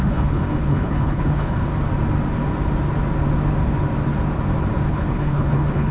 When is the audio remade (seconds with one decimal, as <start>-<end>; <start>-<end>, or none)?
0.0-1.7; 4.9-5.9